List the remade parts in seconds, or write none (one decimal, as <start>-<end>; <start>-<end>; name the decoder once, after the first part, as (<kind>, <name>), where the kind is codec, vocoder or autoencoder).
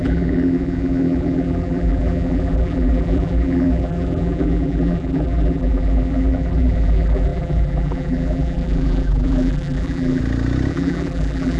0.0-10.2 (vocoder, BigVGAN v2); 10.7-11.6